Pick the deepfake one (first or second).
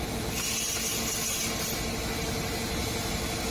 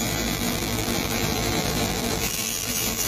second